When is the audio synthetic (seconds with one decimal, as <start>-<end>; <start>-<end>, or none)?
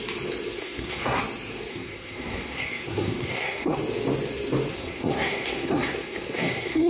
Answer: 0.6-1.2; 1.7-3.8; 4.7-6.9